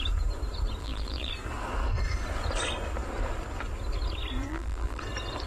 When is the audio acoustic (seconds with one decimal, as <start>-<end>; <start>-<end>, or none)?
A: 0.0-0.8; 1.3-4.5; 5.0-5.5